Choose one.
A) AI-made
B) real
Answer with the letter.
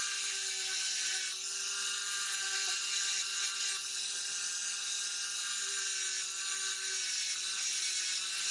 B